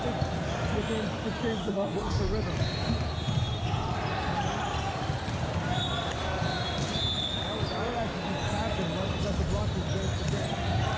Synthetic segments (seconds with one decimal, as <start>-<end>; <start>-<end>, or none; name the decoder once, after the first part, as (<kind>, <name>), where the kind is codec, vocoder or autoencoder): 1.6-2.2 (codec, SNAC)